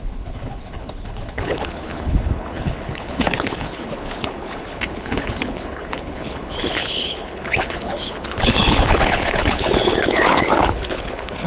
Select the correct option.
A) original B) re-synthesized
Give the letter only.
B